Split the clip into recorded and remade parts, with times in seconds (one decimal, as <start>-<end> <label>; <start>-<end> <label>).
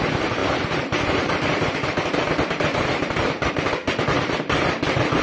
0.0-0.4 recorded; 0.4-3.5 remade; 3.5-5.2 recorded